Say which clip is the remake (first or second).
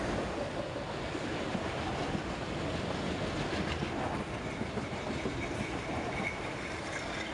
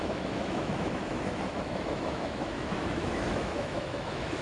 second